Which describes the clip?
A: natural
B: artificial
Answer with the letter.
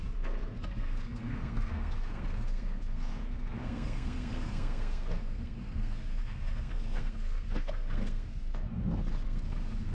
B